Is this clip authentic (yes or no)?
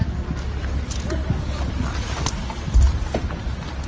yes